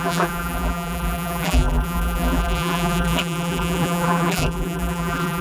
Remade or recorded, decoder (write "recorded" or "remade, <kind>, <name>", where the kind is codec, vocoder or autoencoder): remade, vocoder, BigVGAN v2